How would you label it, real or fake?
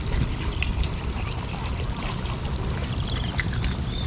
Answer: fake